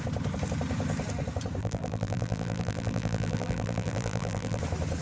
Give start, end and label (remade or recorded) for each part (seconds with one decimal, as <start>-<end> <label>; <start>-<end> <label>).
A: 0.0-1.6 recorded; 1.6-4.6 remade; 4.6-5.0 recorded